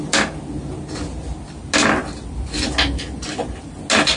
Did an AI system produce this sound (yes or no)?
no